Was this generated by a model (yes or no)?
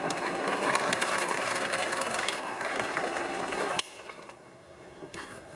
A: yes